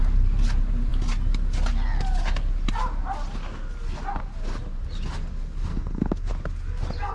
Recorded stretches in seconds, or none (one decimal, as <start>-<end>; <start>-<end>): 0.0-5.7; 6.3-7.1